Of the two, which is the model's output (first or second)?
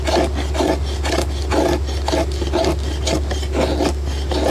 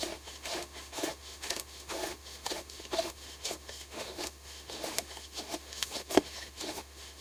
second